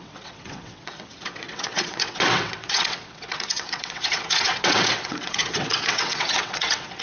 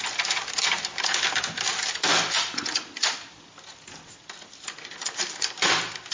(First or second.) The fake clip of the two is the first